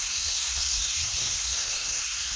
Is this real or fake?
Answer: fake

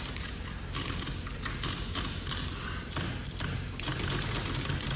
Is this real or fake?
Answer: real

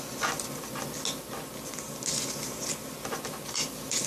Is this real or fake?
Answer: real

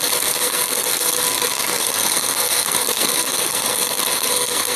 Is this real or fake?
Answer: fake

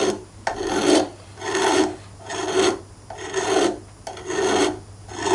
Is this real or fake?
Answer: real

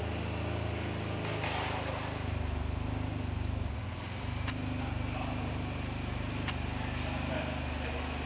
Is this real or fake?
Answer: real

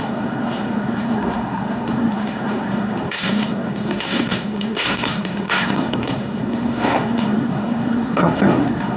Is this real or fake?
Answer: fake